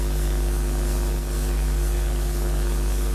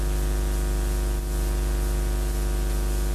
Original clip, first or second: second